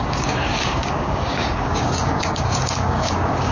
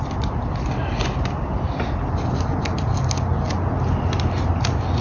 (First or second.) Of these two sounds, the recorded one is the second